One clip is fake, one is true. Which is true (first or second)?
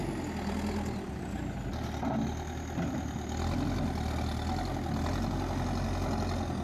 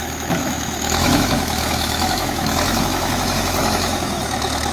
first